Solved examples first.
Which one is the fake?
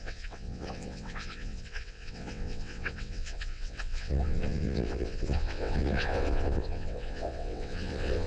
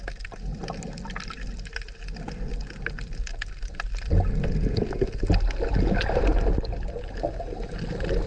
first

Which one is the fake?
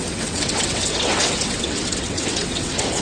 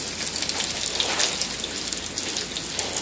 first